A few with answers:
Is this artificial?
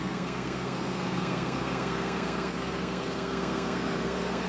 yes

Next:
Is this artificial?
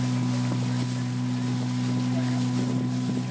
no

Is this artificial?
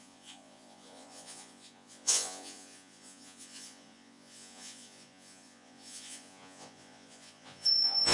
yes